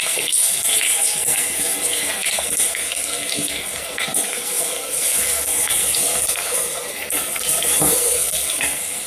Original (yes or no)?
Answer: no